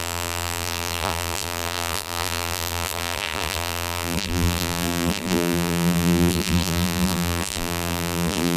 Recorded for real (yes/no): no